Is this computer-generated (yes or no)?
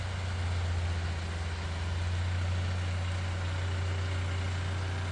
no